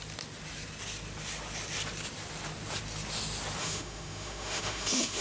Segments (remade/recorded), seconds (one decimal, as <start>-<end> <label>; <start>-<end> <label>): 0.0-3.6 recorded; 3.6-5.2 remade